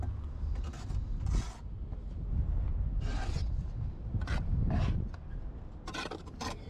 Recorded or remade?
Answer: recorded